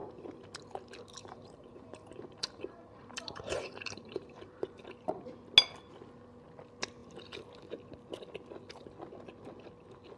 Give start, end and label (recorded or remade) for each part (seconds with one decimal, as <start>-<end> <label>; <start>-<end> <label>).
0.0-1.2 recorded; 1.2-5.2 remade; 5.2-10.2 recorded